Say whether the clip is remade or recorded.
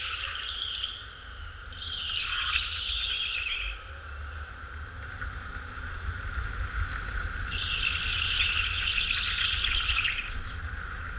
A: recorded